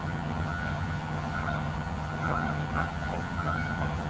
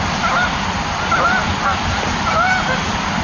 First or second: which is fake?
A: first